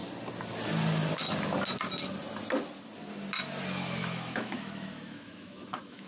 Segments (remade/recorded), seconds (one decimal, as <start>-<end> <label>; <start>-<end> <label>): 0.0-4.0 recorded; 4.0-6.1 remade